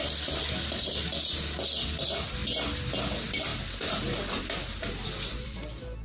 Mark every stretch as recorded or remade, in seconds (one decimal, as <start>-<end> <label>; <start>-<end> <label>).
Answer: 0.0-2.4 remade; 2.4-2.9 recorded; 2.9-6.0 remade